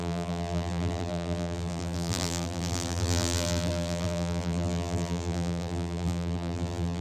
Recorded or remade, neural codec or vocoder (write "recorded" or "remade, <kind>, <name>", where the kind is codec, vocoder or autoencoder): remade, vocoder, BigVGAN v2